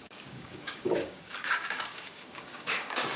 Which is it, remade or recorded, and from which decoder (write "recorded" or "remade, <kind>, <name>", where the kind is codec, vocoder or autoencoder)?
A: remade, codec, DAC